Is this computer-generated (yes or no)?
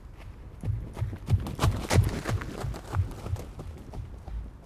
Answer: no